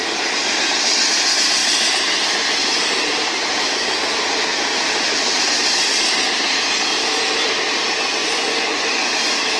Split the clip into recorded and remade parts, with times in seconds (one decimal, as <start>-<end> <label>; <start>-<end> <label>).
0.0-8.2 recorded; 8.2-9.1 remade; 9.1-9.6 recorded